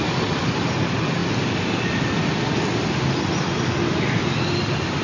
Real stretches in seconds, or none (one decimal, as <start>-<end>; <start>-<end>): 0.0-5.0